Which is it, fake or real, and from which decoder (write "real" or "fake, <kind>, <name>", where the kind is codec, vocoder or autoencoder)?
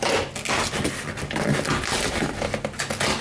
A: real